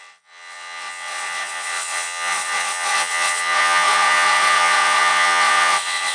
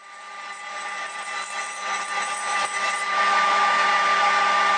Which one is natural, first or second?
second